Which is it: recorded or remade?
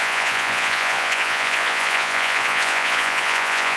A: remade